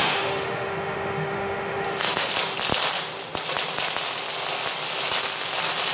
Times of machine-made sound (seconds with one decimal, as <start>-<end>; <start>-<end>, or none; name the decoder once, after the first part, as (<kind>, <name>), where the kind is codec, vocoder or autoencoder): 0.0-2.3 (autoencoder, DAC-VAE)